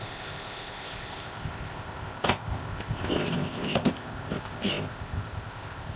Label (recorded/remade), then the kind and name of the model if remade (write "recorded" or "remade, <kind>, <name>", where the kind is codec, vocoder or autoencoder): remade, codec, ZipCodec